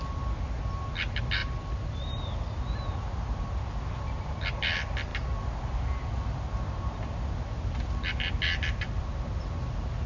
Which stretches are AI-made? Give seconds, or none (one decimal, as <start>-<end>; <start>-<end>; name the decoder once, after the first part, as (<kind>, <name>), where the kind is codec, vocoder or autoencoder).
none